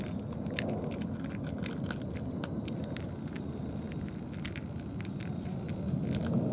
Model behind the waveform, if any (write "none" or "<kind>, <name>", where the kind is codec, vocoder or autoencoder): none